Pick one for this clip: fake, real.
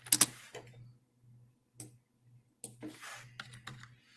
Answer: real